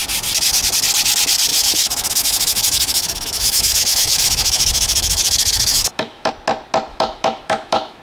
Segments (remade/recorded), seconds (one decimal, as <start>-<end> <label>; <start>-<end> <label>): 0.0-1.5 recorded; 1.5-6.3 remade; 6.3-6.9 recorded; 6.9-8.0 remade